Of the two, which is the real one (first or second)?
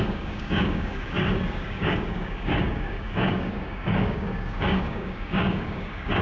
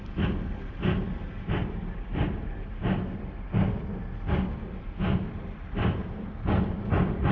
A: second